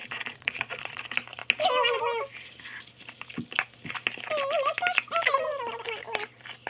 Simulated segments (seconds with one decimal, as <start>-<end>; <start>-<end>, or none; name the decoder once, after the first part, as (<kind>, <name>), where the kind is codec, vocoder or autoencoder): 0.0-1.0 (vocoder, Vocos)